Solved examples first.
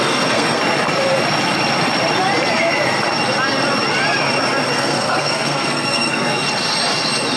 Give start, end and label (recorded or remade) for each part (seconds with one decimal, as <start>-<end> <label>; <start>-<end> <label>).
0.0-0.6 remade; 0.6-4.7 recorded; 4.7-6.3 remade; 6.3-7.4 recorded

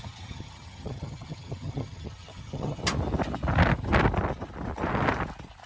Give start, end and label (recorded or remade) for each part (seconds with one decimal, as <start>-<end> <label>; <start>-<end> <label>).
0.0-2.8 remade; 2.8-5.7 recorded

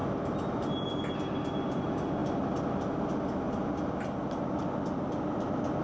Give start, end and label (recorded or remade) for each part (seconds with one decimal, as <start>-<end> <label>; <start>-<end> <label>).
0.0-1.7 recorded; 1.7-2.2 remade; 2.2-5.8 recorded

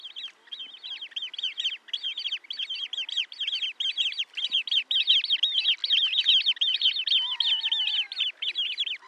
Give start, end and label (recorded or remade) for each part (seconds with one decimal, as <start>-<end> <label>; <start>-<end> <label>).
0.0-5.8 recorded; 5.8-6.9 remade; 6.9-9.1 recorded

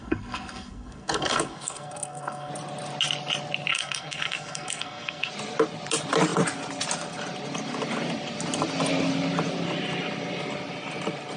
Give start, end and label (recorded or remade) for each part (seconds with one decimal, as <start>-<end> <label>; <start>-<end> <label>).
0.0-2.5 remade; 2.5-3.7 recorded; 3.7-5.3 remade; 5.3-11.4 recorded